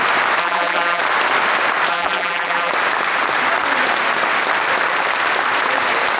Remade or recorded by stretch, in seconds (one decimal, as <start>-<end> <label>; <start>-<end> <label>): 0.0-0.4 recorded; 0.4-1.0 remade; 1.0-1.9 recorded; 1.9-2.7 remade; 2.7-6.2 recorded